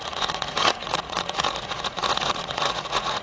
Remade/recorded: remade